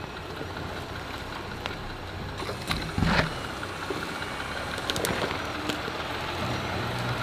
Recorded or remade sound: recorded